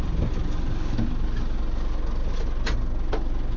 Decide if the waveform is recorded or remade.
recorded